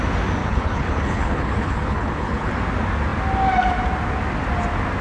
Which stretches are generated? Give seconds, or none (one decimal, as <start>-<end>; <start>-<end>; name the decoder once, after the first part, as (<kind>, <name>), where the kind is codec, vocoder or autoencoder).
0.4-2.5 (codec, HILCodec)